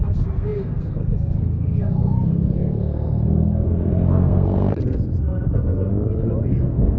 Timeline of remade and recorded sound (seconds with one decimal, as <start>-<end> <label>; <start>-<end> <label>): 0.0-5.9 remade; 5.9-6.5 recorded; 6.5-7.0 remade